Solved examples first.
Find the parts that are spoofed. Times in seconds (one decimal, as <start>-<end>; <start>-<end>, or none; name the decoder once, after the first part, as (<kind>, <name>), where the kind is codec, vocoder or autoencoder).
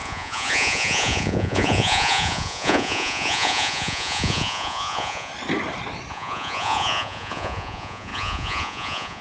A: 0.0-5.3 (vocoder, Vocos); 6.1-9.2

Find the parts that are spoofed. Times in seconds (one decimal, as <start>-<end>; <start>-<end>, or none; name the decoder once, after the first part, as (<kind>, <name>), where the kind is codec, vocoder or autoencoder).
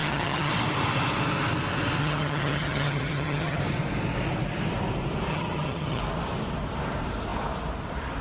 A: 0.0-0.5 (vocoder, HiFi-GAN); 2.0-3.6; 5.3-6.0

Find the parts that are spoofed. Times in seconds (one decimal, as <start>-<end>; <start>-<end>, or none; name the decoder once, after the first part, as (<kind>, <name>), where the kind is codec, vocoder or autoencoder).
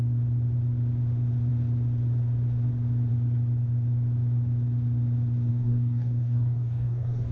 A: 5.5-7.3 (codec, DAC)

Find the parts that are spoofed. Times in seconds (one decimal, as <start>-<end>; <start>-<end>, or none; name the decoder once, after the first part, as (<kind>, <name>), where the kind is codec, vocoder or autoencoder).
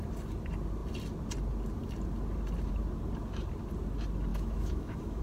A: 4.3-5.2 (autoencoder, DAC-VAE)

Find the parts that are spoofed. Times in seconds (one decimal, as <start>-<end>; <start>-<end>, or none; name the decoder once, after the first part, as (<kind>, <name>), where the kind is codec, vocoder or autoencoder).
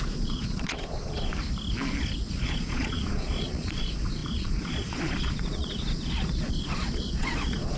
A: 0.0-1.3 (vocoder, Vocos); 2.3-7.8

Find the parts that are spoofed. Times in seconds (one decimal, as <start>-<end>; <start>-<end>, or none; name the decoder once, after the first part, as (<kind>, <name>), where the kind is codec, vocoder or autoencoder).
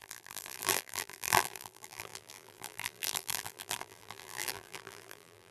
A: 0.0-5.5 (vocoder, BigVGAN v2)